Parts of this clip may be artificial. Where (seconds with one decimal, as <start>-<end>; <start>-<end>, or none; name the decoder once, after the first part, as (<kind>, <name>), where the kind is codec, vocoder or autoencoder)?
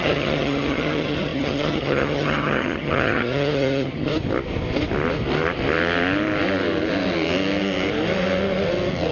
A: 0.0-4.1 (vocoder, HiFi-GAN)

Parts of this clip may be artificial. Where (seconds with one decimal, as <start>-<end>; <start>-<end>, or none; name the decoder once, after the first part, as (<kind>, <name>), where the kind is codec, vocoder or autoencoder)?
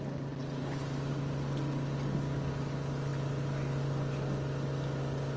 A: none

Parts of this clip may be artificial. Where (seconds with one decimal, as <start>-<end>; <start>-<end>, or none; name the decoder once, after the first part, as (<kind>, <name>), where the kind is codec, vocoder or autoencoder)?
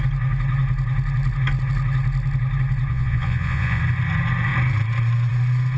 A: 2.9-3.8 (vocoder, Vocos)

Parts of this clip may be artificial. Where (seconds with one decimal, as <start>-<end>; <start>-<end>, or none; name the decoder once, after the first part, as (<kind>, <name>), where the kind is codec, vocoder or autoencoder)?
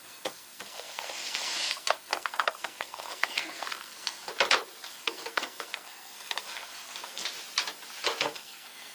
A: 0.0-4.3 (codec, SNAC); 4.9-7.2; 8.2-8.9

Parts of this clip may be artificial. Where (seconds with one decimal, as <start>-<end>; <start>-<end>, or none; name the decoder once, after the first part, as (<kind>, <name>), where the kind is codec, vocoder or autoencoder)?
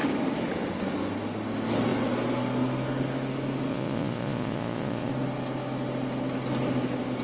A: 3.7-5.1 (vocoder, Vocos)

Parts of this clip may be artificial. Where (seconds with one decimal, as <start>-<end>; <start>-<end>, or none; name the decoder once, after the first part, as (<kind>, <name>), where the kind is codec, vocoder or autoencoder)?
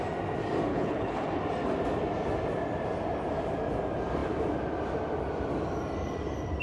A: 0.7-1.4 (codec, HILCodec)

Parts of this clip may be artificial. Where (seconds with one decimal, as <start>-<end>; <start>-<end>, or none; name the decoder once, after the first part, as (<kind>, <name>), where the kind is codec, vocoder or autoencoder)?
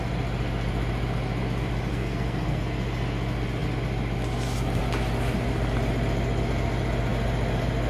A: 1.9-2.6 (codec, SNAC)